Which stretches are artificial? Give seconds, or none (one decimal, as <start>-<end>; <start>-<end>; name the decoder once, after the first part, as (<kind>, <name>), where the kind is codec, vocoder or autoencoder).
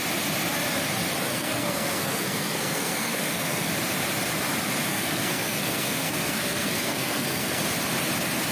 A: 1.3-3.7 (codec, SNAC); 4.9-7.6